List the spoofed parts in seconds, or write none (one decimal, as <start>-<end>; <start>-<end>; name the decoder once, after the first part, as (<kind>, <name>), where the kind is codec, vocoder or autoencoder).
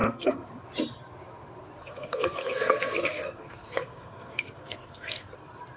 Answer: 0.0-0.5 (codec, SNAC); 1.8-5.3